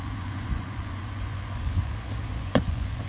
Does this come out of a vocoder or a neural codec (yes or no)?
yes